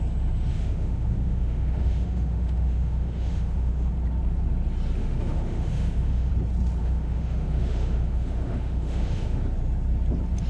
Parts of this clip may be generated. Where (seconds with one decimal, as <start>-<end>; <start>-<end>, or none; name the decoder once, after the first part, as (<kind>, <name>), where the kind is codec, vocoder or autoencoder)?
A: 0.5-3.9 (autoencoder, DAC-VAE); 5.0-6.3; 6.8-9.4